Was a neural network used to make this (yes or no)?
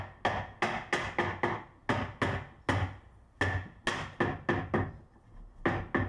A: no